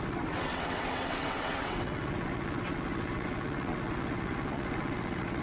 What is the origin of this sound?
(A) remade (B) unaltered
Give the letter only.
A